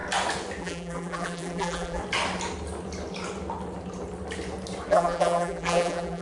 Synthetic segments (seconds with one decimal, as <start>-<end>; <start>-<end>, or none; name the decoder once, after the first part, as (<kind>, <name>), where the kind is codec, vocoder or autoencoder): 0.6-2.0 (vocoder, BigVGAN v2); 4.9-6.2